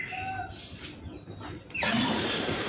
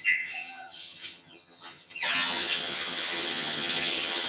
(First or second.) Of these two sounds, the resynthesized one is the second